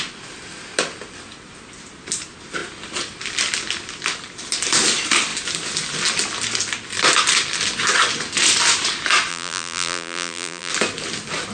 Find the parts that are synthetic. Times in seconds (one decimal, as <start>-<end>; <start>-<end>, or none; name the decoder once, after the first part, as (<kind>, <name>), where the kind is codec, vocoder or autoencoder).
9.3-10.7 (vocoder, BigVGAN v2)